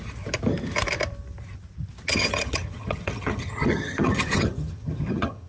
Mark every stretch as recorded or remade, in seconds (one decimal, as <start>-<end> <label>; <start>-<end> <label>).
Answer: 0.0-2.1 recorded; 2.1-5.5 remade